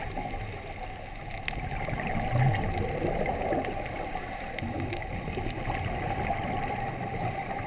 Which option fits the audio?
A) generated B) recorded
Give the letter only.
B